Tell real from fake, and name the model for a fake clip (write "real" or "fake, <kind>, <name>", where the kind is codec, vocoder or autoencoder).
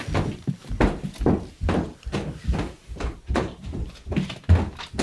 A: real